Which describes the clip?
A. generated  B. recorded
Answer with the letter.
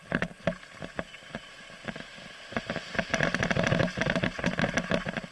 B